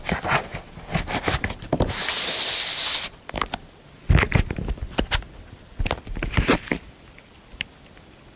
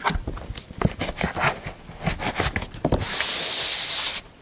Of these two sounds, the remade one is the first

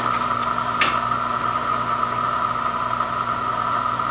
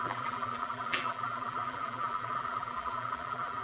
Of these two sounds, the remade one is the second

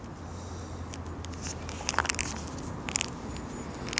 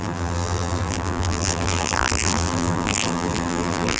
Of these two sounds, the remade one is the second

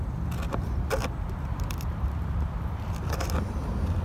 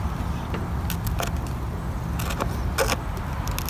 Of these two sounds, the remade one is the first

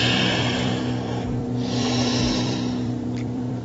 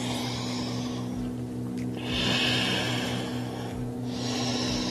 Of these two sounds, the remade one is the first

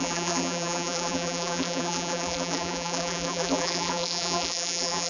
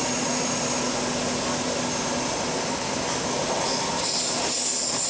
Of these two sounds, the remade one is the first